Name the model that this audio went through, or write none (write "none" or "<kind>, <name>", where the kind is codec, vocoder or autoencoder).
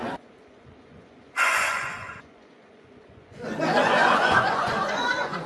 vocoder, Vocos